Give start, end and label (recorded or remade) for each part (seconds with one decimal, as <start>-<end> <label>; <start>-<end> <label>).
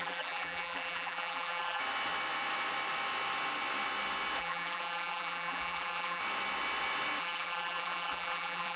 0.0-1.8 remade; 1.8-4.4 recorded; 4.4-6.2 remade; 6.2-7.2 recorded; 7.2-8.8 remade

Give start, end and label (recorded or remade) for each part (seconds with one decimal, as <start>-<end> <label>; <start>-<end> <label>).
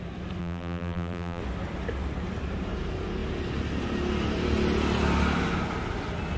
0.0-0.4 recorded; 0.4-1.4 remade; 1.4-6.4 recorded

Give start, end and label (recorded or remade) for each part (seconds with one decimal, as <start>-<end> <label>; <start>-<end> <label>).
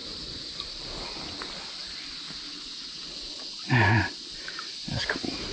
0.0-1.8 remade; 1.8-4.1 recorded; 4.1-5.5 remade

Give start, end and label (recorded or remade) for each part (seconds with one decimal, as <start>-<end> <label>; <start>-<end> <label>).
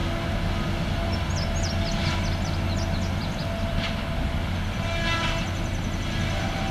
0.0-6.7 recorded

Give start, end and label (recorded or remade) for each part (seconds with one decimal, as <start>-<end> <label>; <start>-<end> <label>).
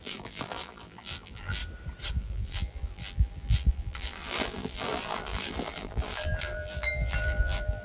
0.0-1.6 remade; 1.6-2.1 recorded; 2.1-7.8 remade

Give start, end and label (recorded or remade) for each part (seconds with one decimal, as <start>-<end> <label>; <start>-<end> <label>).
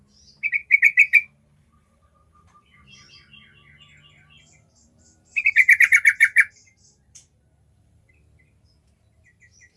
0.0-0.6 recorded; 0.6-3.1 remade; 3.1-4.8 recorded; 4.8-8.1 remade; 8.1-9.8 recorded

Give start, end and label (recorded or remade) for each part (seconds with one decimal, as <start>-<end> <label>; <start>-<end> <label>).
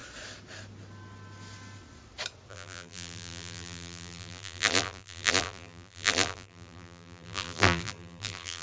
0.0-2.5 recorded; 2.5-8.6 remade